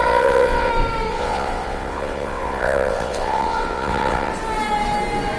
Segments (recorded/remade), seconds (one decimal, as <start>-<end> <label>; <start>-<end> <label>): 0.0-0.7 remade; 0.7-1.1 recorded; 1.1-4.3 remade; 4.3-5.4 recorded